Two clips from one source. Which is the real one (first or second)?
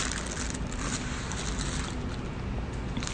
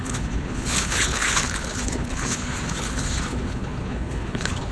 first